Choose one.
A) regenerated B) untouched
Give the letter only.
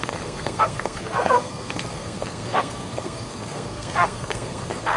A